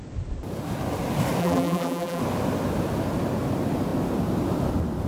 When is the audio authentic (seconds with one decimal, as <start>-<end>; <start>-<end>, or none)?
0.0-1.4; 2.2-5.1